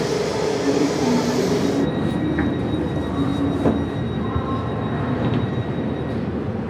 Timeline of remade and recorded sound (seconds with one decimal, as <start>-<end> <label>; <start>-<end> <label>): 0.0-6.7 recorded